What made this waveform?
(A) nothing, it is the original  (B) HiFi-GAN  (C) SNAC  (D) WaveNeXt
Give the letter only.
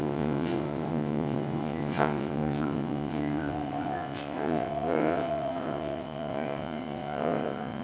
D